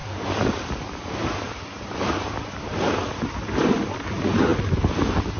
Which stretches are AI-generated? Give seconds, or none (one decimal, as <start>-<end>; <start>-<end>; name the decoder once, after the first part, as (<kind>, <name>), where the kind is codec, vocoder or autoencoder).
0.0-5.4 (vocoder, BigVGAN v2)

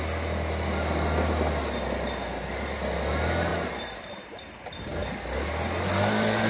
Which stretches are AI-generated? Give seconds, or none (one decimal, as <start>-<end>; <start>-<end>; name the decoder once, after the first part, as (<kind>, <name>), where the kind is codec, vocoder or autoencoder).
3.5-4.5 (vocoder, BigVGAN v2)